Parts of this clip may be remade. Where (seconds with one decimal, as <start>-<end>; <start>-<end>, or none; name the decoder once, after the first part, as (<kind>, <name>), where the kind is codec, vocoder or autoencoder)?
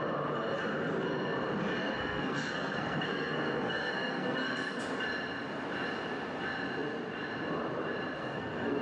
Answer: 1.8-4.8 (codec, SNAC); 8.2-8.8